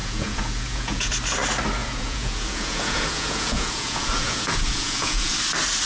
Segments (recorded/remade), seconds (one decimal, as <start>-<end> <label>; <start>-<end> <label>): 0.0-1.1 remade; 1.1-1.8 recorded; 1.8-5.3 remade; 5.3-5.9 recorded